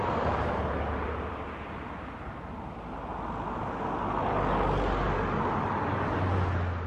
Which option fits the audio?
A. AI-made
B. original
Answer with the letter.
B